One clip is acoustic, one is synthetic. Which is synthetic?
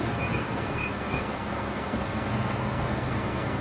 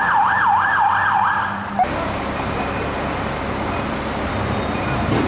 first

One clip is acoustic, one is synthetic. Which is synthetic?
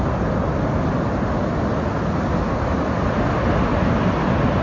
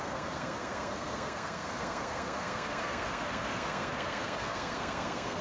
second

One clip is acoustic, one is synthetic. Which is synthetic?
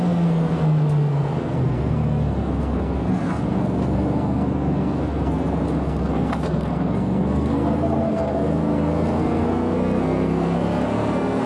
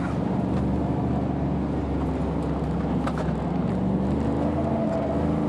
first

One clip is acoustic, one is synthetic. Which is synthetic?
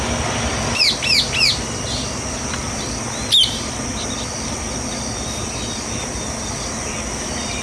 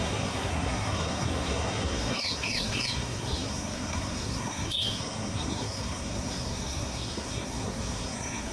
second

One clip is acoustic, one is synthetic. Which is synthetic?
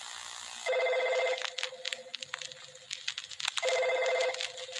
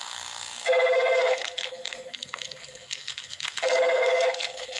second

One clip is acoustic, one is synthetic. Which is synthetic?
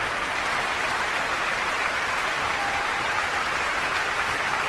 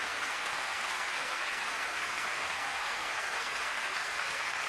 second